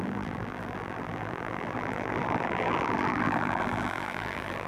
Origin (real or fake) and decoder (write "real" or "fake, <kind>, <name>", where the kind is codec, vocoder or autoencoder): fake, vocoder, BigVGAN v2